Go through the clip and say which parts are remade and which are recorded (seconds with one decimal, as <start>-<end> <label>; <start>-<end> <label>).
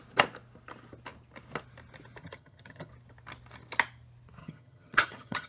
0.0-2.2 recorded; 2.2-2.9 remade; 2.9-4.4 recorded; 4.4-5.5 remade